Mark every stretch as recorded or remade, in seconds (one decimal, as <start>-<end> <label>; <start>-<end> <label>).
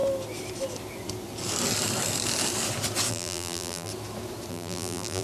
0.0-3.1 recorded; 3.1-3.9 remade; 3.9-4.5 recorded; 4.5-5.2 remade